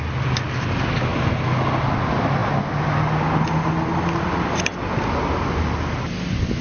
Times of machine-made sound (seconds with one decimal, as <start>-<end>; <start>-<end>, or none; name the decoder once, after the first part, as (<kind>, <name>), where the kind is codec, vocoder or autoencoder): none